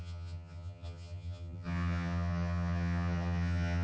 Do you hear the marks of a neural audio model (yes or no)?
yes